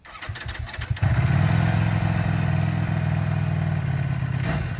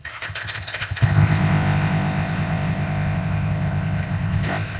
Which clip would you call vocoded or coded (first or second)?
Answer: second